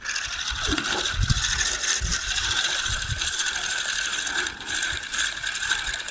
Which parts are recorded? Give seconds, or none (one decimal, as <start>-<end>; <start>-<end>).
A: 0.0-2.1; 3.5-6.1